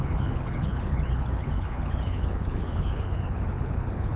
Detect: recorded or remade remade